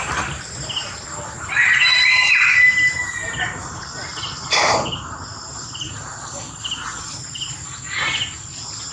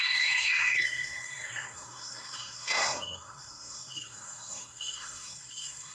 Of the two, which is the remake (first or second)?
second